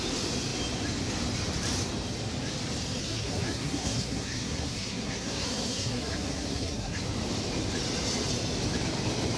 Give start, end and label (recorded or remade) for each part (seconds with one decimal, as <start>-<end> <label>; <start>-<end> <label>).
0.0-3.0 recorded; 3.0-7.0 remade; 7.0-9.4 recorded